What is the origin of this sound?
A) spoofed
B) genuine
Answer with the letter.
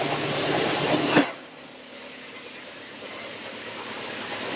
B